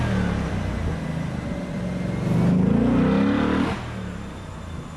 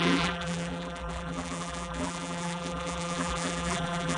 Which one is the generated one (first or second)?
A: second